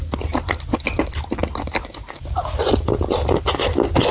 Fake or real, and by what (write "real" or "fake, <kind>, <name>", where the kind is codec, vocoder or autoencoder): real